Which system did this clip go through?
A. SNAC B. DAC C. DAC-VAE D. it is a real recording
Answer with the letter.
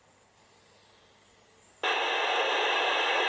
D